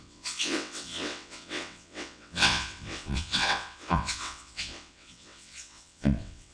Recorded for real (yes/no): no